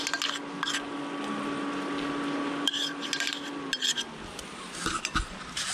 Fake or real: real